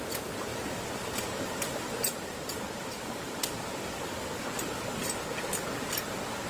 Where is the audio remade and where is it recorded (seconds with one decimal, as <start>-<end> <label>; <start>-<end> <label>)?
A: 0.0-6.5 recorded

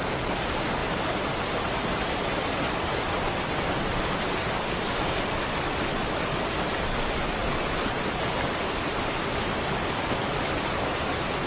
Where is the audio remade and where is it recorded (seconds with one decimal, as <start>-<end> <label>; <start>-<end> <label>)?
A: 0.0-11.5 recorded

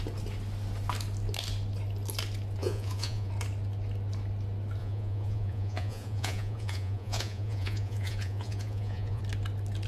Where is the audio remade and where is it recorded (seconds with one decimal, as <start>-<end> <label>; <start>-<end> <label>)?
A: 0.0-2.6 recorded; 2.6-3.3 remade; 3.3-4.8 recorded; 4.8-9.2 remade; 9.2-9.9 recorded

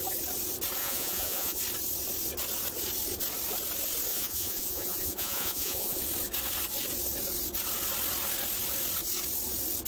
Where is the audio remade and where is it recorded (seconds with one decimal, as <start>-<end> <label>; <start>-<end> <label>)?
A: 0.0-0.8 recorded; 0.8-1.6 remade; 1.6-4.1 recorded; 4.1-6.0 remade; 6.0-9.9 recorded

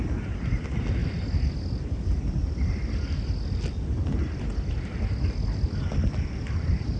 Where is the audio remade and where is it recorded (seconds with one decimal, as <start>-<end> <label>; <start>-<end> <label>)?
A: 0.0-7.0 recorded